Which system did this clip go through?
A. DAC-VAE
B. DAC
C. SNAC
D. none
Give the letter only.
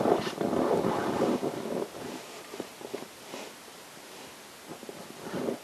D